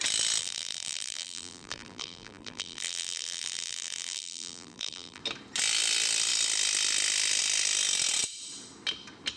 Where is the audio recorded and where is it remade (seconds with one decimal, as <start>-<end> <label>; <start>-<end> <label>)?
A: 0.0-0.4 recorded; 0.4-5.2 remade; 5.2-9.4 recorded